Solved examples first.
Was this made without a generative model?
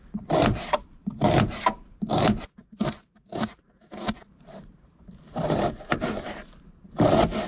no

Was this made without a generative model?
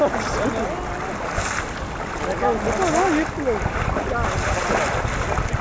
yes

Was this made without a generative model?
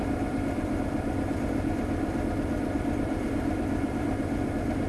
no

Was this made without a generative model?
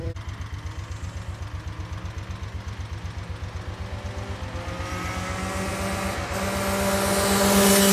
yes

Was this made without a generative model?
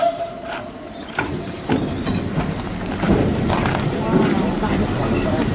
no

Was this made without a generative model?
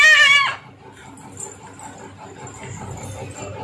yes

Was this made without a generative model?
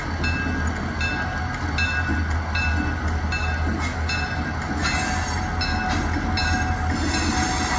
yes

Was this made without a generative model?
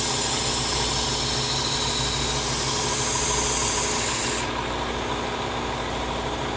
yes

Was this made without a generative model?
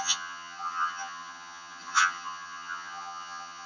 no